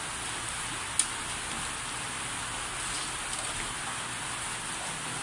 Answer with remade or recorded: recorded